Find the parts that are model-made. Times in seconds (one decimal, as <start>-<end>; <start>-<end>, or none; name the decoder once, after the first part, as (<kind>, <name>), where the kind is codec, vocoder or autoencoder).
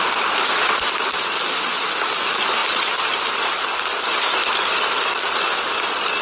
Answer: 0.0-2.6 (vocoder, BigVGAN v2); 4.8-6.2